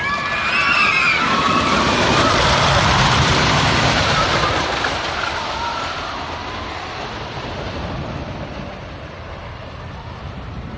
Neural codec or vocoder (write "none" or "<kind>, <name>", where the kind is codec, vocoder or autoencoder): vocoder, BigVGAN v2